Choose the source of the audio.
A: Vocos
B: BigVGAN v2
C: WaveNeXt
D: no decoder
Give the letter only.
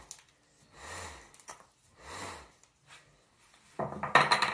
D